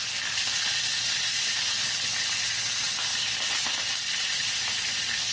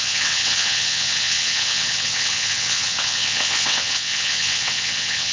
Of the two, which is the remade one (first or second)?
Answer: second